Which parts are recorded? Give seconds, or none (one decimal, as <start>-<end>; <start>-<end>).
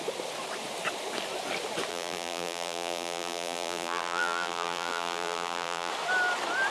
0.0-1.9; 5.9-6.7